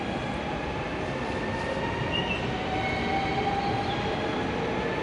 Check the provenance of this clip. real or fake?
real